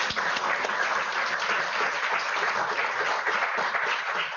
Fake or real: real